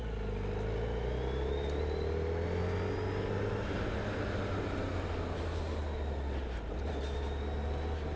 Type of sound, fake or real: real